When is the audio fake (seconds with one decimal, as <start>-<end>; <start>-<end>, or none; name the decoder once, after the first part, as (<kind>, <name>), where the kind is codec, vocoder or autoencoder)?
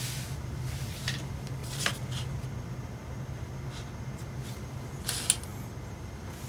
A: none